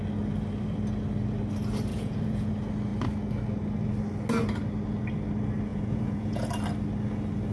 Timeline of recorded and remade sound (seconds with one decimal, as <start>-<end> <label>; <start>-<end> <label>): 0.0-1.9 recorded; 1.9-2.5 remade; 2.5-5.7 recorded; 5.7-6.5 remade; 6.5-7.5 recorded